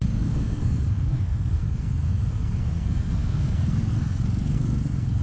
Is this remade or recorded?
remade